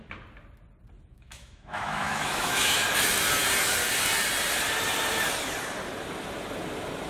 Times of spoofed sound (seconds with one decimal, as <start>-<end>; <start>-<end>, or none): 1.1-2.8